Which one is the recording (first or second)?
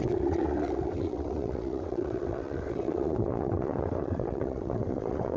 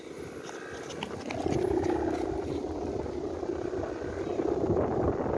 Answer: second